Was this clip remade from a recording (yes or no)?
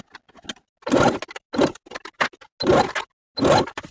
no